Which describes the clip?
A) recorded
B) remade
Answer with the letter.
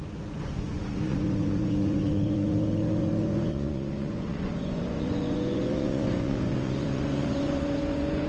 B